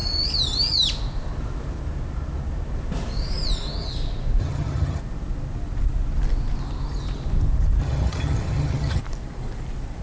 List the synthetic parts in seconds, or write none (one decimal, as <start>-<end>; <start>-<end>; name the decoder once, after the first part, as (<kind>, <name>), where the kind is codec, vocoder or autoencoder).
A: 4.4-5.0 (vocoder, HiFi-GAN); 7.8-9.0